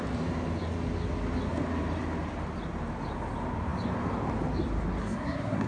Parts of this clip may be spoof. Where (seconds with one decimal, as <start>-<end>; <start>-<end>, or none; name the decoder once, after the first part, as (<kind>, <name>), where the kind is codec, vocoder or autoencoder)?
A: 5.0-5.7 (codec, SNAC)